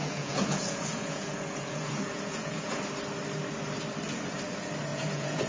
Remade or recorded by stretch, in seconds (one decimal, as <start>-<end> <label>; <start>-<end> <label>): 0.0-2.8 remade; 2.8-4.9 recorded; 4.9-5.5 remade